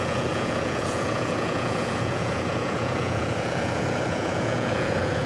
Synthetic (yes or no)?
yes